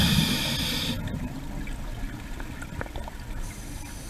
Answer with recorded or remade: recorded